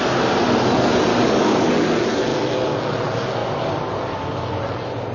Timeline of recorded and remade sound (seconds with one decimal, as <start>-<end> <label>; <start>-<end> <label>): 0.0-1.1 recorded; 1.1-1.7 remade; 1.7-5.1 recorded